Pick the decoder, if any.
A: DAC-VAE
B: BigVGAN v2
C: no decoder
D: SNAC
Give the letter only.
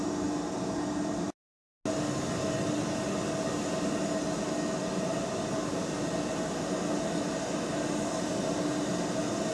C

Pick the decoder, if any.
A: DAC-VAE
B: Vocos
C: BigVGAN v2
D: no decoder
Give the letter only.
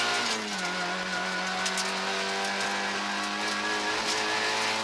D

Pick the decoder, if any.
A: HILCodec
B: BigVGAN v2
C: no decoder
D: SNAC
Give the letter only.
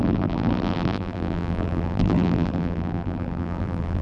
B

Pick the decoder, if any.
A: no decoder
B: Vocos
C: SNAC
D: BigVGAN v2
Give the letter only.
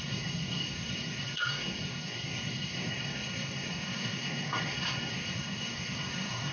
C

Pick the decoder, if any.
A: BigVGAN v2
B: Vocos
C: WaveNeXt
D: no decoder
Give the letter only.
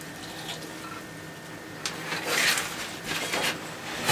D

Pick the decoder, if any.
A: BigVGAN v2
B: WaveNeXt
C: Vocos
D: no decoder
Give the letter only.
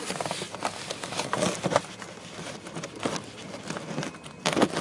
D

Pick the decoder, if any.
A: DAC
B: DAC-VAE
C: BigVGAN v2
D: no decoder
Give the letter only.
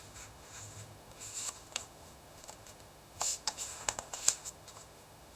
B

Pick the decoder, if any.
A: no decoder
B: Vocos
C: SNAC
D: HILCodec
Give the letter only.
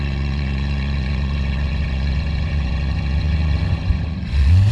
B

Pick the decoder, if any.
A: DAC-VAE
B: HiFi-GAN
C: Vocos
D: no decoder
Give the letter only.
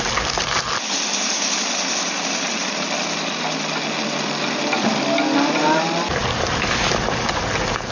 D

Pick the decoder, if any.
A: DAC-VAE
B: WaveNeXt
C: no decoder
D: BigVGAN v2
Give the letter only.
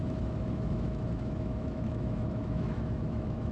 A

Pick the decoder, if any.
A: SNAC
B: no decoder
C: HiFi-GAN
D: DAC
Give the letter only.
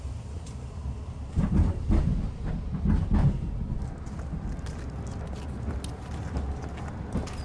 B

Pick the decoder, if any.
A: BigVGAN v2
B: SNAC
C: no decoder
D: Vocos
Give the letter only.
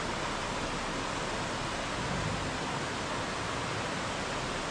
C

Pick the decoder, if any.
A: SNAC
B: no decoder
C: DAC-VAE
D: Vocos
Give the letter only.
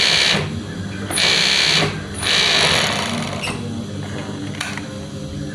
B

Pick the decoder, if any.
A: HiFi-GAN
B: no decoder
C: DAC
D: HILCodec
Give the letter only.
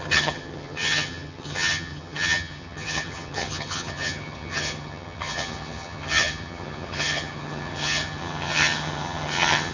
A